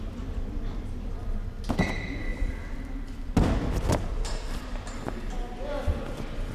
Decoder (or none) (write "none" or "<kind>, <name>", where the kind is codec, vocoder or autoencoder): none